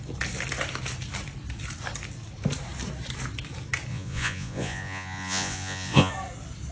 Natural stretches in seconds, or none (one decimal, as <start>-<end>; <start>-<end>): 0.0-3.9; 6.1-6.7